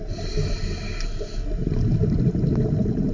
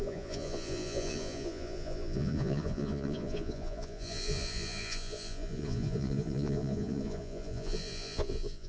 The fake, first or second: second